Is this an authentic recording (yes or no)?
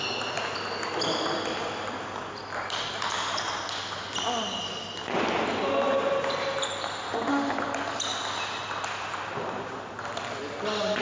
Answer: yes